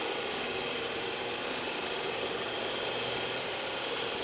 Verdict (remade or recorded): remade